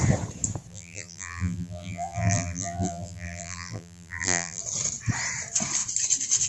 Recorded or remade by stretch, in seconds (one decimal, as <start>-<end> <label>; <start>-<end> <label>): 0.0-0.7 recorded; 0.7-4.6 remade; 4.6-6.5 recorded